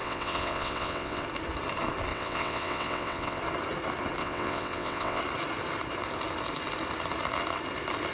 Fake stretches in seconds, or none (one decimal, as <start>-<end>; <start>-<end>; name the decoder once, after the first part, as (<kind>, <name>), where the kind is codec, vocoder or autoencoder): 0.0-1.2 (vocoder, WaveNeXt); 2.1-3.4; 4.2-5.2